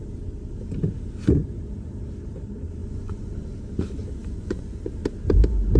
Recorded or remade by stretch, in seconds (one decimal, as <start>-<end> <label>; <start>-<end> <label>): 0.0-2.8 recorded; 2.8-3.6 remade; 3.6-4.2 recorded; 4.2-4.8 remade; 4.8-5.8 recorded